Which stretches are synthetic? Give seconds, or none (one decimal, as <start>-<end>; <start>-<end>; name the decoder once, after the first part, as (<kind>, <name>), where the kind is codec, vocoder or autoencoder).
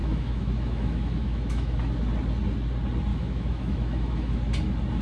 0.0-1.9 (autoencoder, DAC-VAE); 3.1-4.4